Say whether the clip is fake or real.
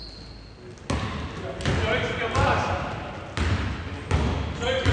real